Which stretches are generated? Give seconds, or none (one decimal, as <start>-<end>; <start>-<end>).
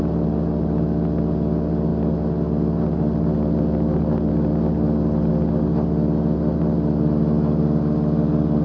none